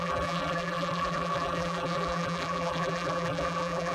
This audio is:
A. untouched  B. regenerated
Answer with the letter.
B